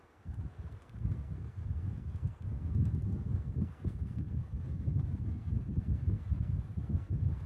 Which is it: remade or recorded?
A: remade